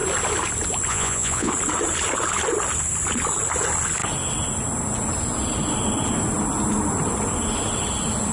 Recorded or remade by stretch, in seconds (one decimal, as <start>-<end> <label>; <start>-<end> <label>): 0.0-0.9 recorded; 0.9-1.5 remade; 1.5-8.3 recorded